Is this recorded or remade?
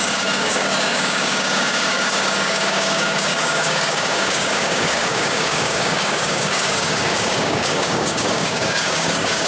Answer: remade